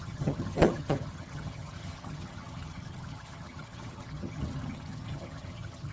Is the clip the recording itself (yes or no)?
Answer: no